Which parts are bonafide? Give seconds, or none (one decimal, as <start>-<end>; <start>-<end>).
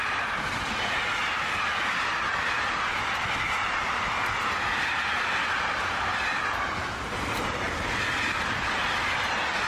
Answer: 0.0-1.2; 3.8-9.7